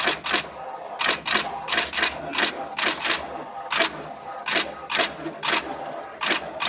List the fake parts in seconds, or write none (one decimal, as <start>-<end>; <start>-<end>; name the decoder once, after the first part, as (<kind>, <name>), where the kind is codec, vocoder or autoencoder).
none